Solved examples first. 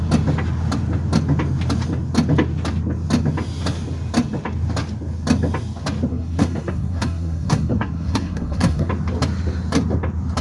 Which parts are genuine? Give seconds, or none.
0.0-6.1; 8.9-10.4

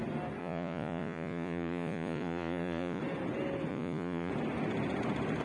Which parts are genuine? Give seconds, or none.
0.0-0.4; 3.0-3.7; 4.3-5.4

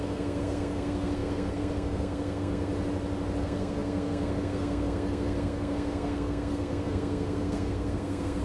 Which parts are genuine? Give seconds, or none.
2.7-3.4

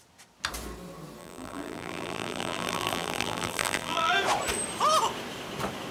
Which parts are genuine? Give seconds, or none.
0.0-1.2; 4.1-5.9

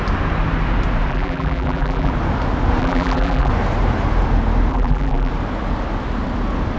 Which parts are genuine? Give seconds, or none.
0.0-1.1; 2.1-2.8; 3.5-4.7; 5.3-6.8